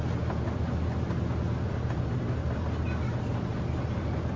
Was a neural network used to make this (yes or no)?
no